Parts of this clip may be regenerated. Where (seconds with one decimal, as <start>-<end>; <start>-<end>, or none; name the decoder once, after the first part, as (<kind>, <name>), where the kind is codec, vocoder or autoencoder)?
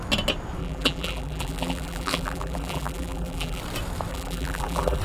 0.6-3.6 (vocoder, BigVGAN v2); 4.1-5.0